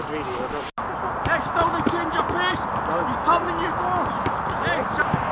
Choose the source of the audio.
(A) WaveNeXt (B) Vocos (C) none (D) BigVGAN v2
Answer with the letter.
C